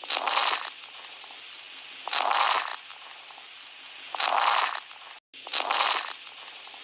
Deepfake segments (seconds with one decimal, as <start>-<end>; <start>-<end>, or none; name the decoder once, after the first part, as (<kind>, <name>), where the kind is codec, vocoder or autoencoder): none